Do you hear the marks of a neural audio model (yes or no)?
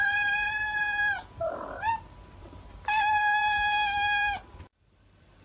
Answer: yes